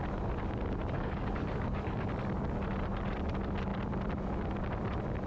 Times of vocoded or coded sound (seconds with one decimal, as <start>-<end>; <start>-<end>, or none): 0.8-2.1